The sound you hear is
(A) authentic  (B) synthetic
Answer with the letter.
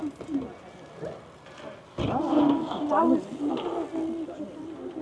A